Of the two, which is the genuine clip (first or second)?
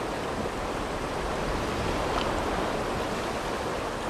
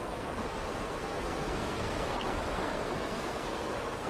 first